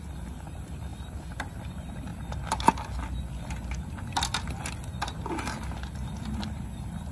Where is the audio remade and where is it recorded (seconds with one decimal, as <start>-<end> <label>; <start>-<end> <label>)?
0.0-2.1 remade; 2.1-6.4 recorded; 6.4-7.1 remade